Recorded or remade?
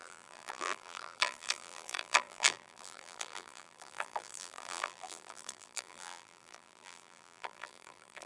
remade